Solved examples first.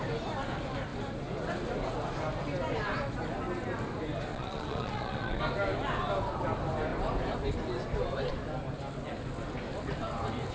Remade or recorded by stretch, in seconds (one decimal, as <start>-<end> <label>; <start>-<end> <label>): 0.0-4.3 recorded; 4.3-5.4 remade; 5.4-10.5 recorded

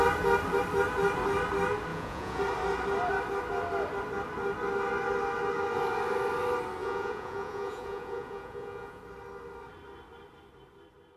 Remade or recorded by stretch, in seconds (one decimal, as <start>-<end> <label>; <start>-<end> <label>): 0.0-1.9 recorded; 1.9-2.4 remade; 2.4-6.8 recorded; 6.8-9.0 remade; 9.0-11.2 recorded

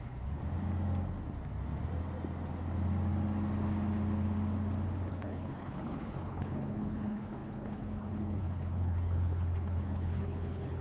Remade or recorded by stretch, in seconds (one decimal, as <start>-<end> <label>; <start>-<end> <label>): 0.0-0.4 remade; 0.4-5.1 recorded; 5.1-10.8 remade

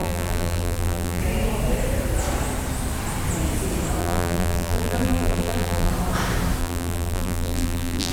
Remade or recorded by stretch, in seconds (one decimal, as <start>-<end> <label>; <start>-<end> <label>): 0.0-1.2 remade; 1.2-4.0 recorded; 4.0-5.9 remade; 5.9-6.6 recorded; 6.6-8.1 remade

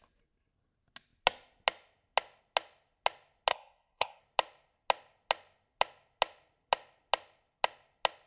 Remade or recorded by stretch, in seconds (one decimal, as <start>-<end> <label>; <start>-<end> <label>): 0.0-3.5 recorded; 3.5-4.2 remade; 4.2-8.3 recorded

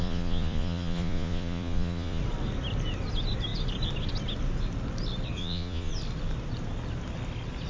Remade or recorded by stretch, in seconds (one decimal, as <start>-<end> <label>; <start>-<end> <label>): 0.0-2.2 remade; 2.2-5.4 recorded; 5.4-5.9 remade; 5.9-7.7 recorded

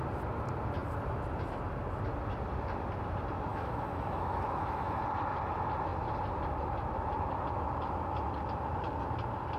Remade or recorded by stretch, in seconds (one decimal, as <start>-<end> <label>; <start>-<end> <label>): 0.0-3.5 recorded; 3.5-5.0 remade; 5.0-9.6 recorded